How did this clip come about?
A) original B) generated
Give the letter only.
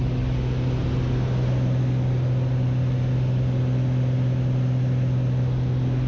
A